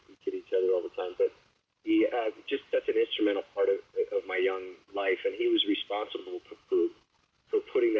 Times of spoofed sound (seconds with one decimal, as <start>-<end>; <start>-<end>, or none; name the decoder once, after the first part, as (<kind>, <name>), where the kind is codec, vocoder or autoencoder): 6.2-7.0 (autoencoder, DAC-VAE)